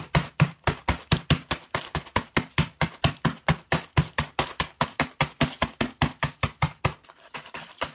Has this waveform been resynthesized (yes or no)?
no